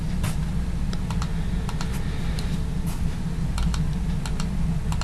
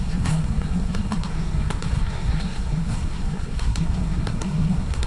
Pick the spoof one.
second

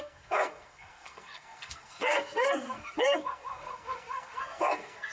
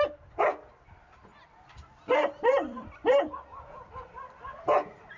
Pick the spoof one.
first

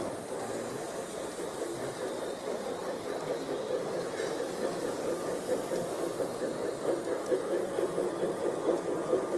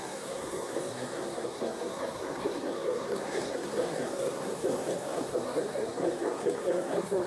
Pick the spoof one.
second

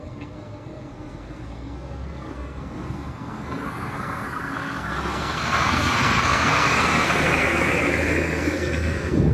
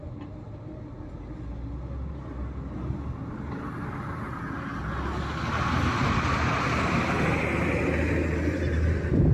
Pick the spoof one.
first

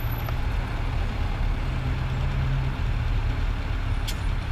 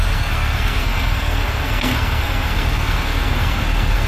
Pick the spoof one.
second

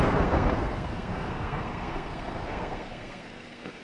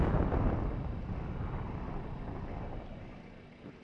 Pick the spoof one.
first